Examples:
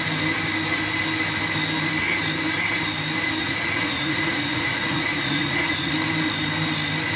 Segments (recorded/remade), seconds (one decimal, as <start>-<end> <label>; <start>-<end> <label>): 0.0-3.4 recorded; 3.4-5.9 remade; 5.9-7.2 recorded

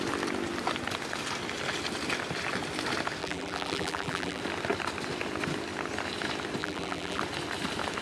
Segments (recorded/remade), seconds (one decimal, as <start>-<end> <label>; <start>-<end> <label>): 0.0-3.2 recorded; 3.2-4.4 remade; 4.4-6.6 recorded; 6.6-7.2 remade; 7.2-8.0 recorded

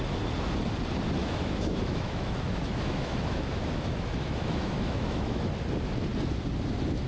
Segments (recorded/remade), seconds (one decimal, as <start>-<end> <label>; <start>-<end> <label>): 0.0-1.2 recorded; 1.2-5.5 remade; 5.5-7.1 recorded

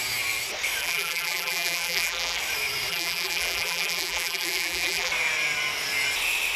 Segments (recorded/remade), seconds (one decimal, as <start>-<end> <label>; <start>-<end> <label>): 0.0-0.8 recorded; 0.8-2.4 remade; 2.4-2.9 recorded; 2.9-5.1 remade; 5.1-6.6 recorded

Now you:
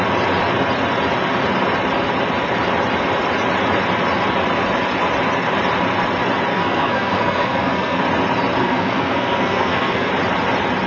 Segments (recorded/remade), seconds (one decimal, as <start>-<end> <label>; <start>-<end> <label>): 0.0-6.5 recorded; 6.5-8.0 remade; 8.0-8.6 recorded; 8.6-10.1 remade; 10.1-10.9 recorded

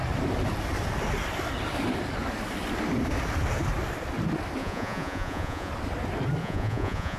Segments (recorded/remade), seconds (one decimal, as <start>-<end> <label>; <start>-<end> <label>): 0.0-4.6 recorded; 4.6-5.7 remade; 5.7-6.4 recorded; 6.4-7.2 remade